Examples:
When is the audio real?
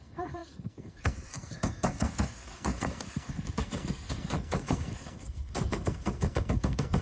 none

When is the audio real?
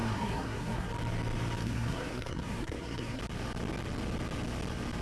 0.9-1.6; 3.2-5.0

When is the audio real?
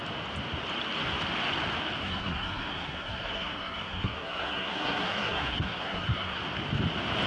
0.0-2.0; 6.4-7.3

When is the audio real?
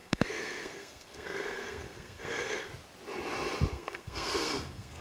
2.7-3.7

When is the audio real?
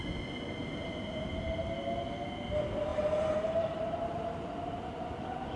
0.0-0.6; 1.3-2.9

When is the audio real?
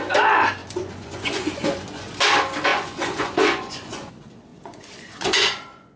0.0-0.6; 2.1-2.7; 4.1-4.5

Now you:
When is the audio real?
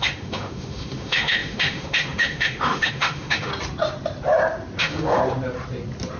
3.5-4.8; 5.2-6.2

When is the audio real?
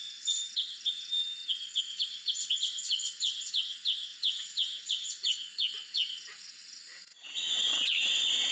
none